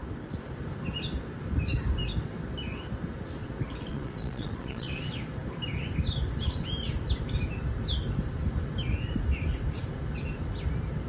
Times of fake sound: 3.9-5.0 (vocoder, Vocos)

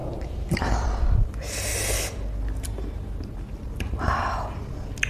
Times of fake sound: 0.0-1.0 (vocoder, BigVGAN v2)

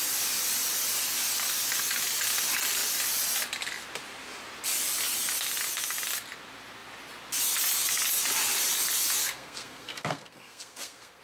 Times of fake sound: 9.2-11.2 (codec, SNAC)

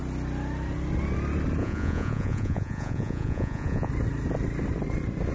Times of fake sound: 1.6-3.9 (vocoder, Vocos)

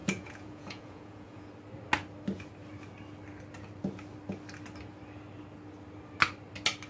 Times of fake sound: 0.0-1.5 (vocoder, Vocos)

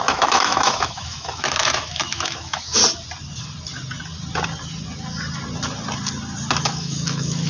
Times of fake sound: 0.0-2.8 (autoencoder, DAC-VAE); 6.6-7.5

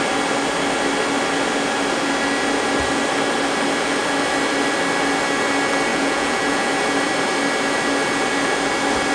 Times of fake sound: 5.9-6.7 (vocoder, Vocos)

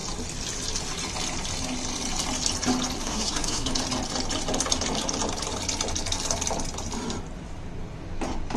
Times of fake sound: 3.0-3.7 (codec, SNAC)